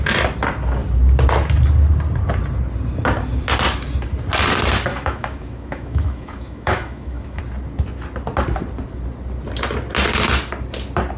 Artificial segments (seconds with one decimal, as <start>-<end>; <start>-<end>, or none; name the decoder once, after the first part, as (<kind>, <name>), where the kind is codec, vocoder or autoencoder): 4.9-7.4 (autoencoder, DAC-VAE)